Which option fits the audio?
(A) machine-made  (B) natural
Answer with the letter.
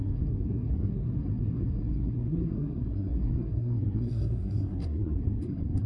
A